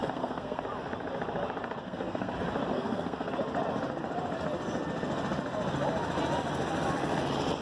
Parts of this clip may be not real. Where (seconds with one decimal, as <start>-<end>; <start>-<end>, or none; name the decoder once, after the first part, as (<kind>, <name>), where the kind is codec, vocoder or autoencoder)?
0.0-0.6 (codec, SNAC); 1.8-2.3; 2.7-3.3